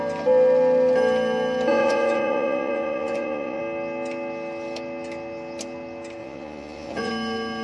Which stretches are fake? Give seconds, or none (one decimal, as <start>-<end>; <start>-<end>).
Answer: 1.7-3.6; 6.2-7.1